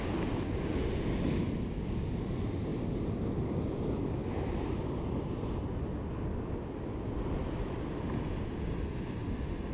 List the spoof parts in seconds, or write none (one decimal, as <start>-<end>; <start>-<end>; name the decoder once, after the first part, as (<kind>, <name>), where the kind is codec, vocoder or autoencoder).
none